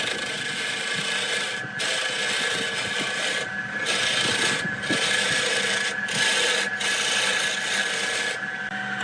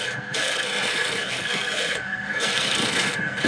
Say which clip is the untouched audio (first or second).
first